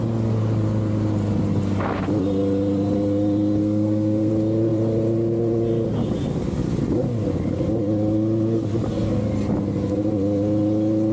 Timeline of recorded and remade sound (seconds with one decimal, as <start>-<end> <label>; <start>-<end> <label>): 0.0-3.6 recorded; 3.6-4.3 remade; 4.3-11.1 recorded